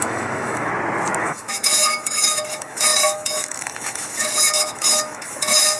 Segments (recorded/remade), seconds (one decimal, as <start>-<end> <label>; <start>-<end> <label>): 0.0-0.7 remade; 0.7-1.2 recorded; 1.2-5.8 remade